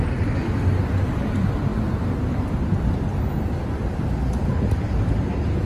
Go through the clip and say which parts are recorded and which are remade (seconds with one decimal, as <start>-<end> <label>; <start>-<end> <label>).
0.0-5.7 recorded